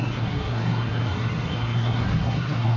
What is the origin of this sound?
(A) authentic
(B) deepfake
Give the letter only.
B